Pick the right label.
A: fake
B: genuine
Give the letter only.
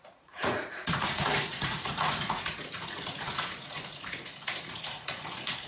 A